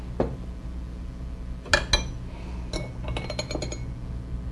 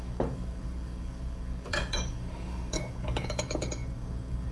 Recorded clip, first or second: first